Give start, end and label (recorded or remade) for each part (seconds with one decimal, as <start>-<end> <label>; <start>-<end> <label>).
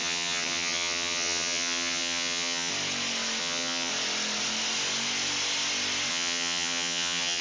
0.0-2.7 remade; 2.7-3.4 recorded; 3.4-3.9 remade; 3.9-6.1 recorded; 6.1-7.4 remade